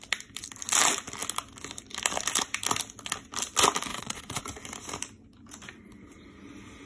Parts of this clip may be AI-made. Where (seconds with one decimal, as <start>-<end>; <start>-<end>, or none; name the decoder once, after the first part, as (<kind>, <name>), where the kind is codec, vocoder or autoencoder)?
3.9-4.4 (vocoder, Vocos)